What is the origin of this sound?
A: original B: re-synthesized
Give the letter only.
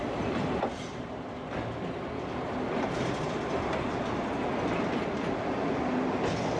A